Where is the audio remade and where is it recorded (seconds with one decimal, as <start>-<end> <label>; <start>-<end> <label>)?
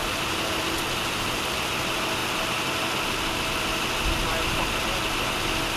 0.0-0.6 remade; 0.6-1.0 recorded; 1.0-1.7 remade; 1.7-2.2 recorded; 2.2-3.4 remade; 3.4-5.8 recorded